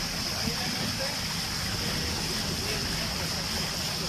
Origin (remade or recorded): recorded